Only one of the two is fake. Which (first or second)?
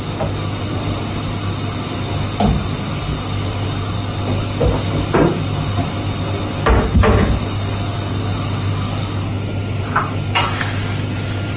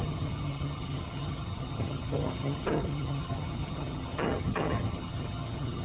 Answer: second